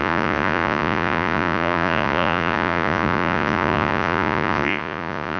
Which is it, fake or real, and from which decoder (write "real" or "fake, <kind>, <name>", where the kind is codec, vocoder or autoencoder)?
fake, vocoder, Vocos